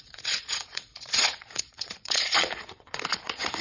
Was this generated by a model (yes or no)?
yes